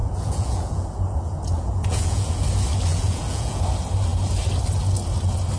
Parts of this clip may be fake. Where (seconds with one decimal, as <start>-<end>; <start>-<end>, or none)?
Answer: 0.0-2.4; 2.9-3.6